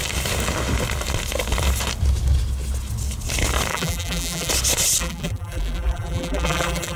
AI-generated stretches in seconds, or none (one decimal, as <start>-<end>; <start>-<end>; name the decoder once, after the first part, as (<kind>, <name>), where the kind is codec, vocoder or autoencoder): 3.7-4.5 (vocoder, BigVGAN v2); 5.0-7.0